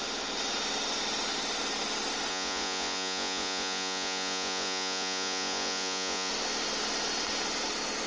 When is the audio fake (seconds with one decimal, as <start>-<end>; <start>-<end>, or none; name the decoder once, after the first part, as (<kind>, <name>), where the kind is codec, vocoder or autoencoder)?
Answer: 2.3-6.3 (vocoder, Vocos)